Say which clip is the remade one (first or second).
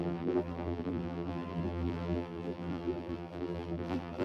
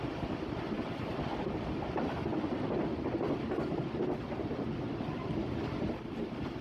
first